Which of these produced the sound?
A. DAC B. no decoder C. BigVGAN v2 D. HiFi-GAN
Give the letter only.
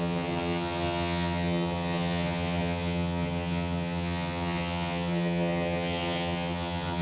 D